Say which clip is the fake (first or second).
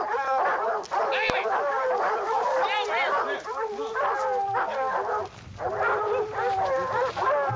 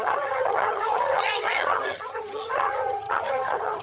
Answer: second